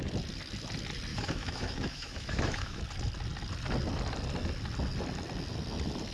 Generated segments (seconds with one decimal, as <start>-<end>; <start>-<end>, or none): 1.1-2.8